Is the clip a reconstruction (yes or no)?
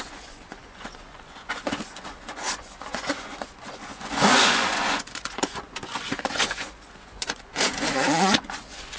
yes